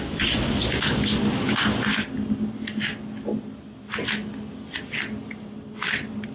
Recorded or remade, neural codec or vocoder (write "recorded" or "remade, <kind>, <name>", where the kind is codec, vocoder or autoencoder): recorded